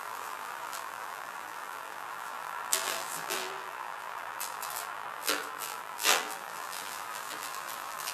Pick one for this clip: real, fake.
fake